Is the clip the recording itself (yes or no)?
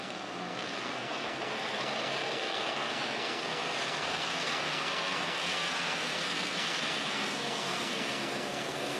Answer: no